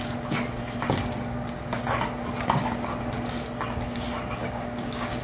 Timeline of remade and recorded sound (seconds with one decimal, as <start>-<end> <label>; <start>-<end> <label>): 0.0-1.1 recorded; 1.1-1.8 remade; 1.8-4.4 recorded; 4.4-5.2 remade